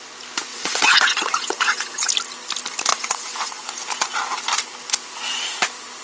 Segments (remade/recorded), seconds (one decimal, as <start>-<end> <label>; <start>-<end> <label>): 0.0-0.5 recorded; 0.5-2.1 remade; 2.1-2.9 recorded; 2.9-3.7 remade; 3.7-6.0 recorded